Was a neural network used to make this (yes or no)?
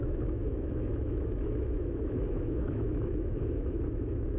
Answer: yes